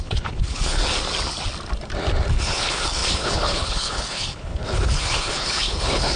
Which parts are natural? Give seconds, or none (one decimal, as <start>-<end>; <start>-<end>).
0.8-2.3